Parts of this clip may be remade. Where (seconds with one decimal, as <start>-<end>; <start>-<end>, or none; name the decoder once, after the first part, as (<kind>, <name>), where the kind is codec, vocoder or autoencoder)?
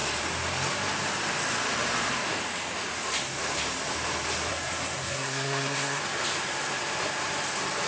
4.5-6.0 (codec, SNAC)